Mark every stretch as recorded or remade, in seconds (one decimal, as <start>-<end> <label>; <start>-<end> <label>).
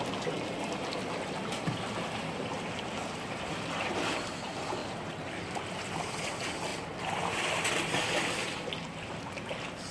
0.0-9.9 recorded